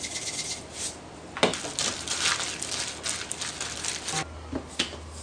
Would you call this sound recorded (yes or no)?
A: yes